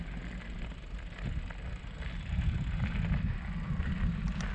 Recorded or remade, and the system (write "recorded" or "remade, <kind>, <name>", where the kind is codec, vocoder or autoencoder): recorded